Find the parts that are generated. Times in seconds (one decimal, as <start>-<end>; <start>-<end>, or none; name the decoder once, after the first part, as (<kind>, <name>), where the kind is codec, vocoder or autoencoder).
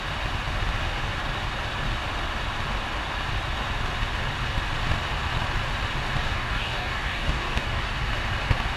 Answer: 6.2-7.9 (codec, DAC)